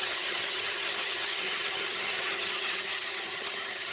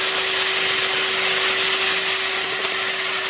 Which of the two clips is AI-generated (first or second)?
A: first